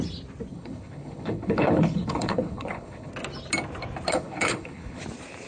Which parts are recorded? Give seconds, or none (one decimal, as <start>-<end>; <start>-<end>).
0.0-0.5; 3.1-4.1; 5.0-5.5